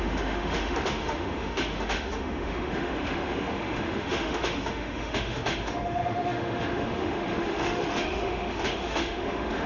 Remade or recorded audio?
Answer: remade